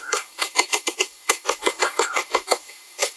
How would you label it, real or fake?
fake